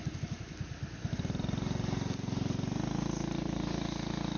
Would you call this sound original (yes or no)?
yes